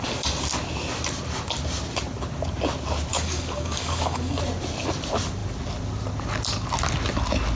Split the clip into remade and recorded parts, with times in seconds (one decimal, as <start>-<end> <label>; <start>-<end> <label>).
0.0-3.1 recorded; 3.1-4.4 remade; 4.4-7.6 recorded